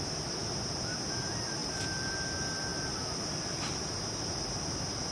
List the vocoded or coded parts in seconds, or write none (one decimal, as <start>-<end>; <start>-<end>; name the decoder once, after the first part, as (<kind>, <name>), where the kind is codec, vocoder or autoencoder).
1.6-2.2 (vocoder, BigVGAN v2); 2.7-4.0